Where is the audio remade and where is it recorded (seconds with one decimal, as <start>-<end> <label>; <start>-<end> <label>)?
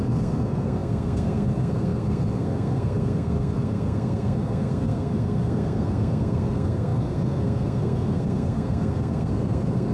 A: 0.0-9.9 remade